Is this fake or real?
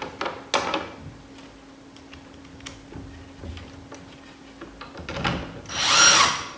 real